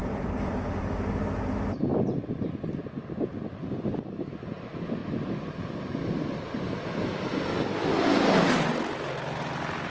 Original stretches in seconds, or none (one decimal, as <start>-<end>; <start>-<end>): 0.5-9.9